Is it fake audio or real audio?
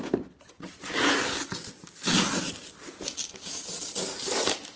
real